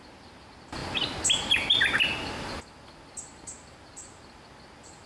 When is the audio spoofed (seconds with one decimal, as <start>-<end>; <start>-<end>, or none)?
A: none